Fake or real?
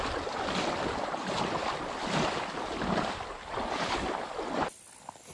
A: real